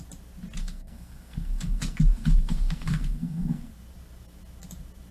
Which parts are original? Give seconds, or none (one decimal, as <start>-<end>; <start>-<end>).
0.0-0.6; 3.7-5.1